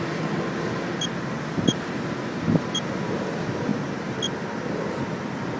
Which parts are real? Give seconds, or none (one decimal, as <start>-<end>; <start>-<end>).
0.0-3.7; 4.5-5.6